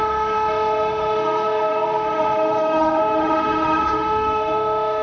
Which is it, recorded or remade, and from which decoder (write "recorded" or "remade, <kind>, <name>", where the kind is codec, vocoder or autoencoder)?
remade, autoencoder, DAC-VAE